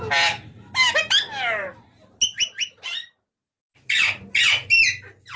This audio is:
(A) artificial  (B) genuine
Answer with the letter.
B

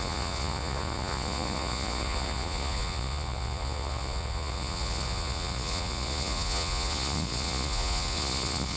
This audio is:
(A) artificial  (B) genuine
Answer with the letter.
A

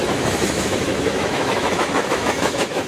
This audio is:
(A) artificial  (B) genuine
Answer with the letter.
A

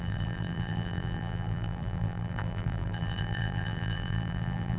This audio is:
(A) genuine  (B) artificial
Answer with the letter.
B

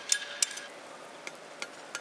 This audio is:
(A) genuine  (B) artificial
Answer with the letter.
A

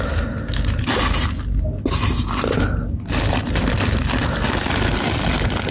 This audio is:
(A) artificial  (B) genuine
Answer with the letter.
B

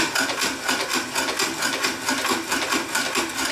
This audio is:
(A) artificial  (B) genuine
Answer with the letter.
B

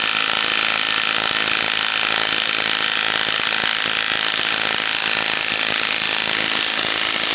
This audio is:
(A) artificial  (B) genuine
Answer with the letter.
B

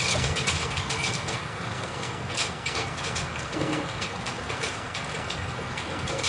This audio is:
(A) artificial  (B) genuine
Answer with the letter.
A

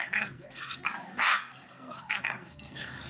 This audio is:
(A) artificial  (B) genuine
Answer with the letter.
A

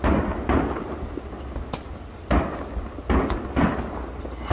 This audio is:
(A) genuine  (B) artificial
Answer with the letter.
A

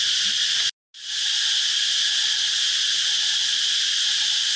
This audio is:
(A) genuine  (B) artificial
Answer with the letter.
A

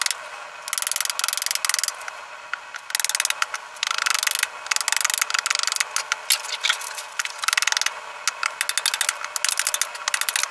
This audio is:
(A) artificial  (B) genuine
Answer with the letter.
B